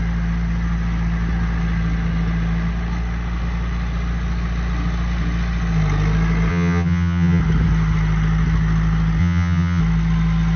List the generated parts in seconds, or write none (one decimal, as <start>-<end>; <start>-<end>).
6.5-7.4; 9.2-9.8